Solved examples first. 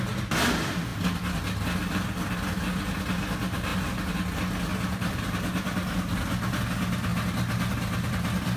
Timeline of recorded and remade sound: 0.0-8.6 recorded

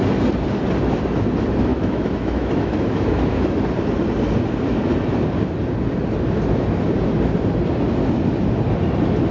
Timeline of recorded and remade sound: 0.0-1.7 recorded; 1.7-3.6 remade; 3.6-9.3 recorded

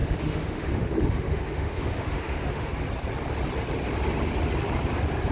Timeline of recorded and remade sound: 0.0-2.7 remade; 2.7-5.3 recorded

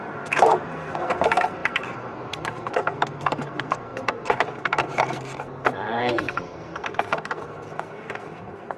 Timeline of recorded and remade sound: 0.0-8.8 remade

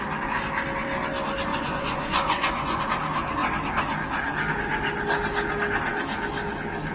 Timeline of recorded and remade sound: 0.0-1.5 recorded; 1.5-2.8 remade; 2.8-6.9 recorded

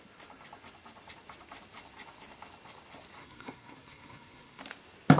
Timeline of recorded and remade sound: 0.0-3.2 recorded; 3.2-4.6 remade; 4.6-5.2 recorded

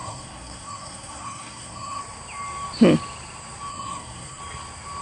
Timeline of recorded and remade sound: 0.0-2.0 remade; 2.0-3.7 recorded; 3.7-4.4 remade; 4.4-5.0 recorded

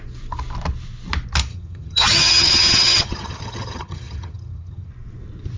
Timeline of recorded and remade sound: 0.0-1.5 recorded; 1.5-4.9 remade; 4.9-5.6 recorded